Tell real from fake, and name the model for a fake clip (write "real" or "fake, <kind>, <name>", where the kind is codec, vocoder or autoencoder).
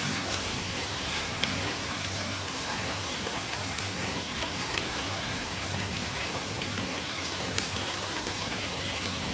fake, codec, SNAC